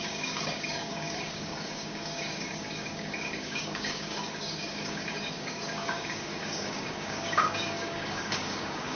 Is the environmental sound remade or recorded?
remade